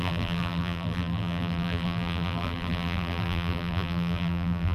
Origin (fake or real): fake